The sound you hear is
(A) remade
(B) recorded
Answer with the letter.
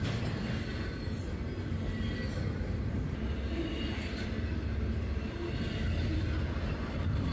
B